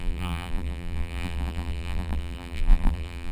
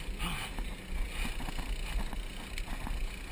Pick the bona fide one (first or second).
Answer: second